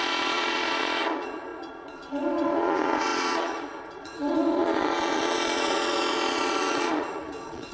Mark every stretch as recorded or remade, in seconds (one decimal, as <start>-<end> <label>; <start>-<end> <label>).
0.0-7.7 remade